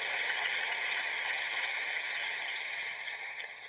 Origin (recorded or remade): remade